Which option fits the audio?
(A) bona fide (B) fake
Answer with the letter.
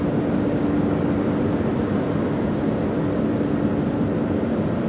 A